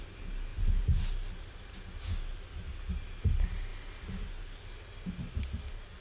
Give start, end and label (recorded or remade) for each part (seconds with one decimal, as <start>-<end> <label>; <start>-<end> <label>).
0.0-6.0 recorded